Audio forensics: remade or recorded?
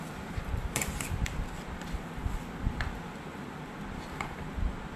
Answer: remade